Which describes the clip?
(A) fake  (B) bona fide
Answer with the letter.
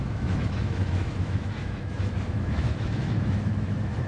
A